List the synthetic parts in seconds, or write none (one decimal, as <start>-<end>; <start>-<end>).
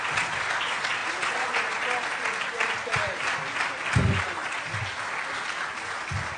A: none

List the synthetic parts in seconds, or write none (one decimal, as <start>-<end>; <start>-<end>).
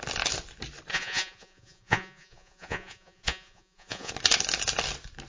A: 0.9-4.1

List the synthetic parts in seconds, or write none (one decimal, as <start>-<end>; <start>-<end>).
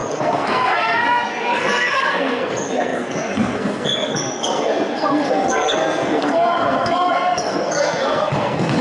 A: 0.0-8.8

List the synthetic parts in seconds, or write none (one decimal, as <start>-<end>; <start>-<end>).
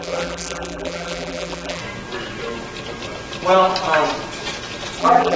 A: 0.0-1.8; 5.0-5.4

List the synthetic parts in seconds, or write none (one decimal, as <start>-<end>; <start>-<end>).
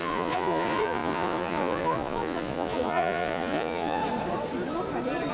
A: 0.0-4.0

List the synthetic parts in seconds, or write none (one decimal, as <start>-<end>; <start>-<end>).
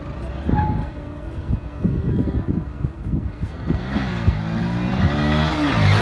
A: 0.8-4.4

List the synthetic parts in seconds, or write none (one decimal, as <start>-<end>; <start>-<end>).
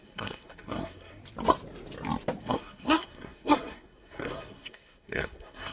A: 0.0-1.2; 2.4-5.7